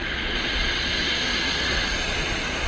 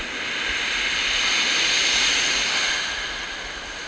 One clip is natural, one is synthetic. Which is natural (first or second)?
second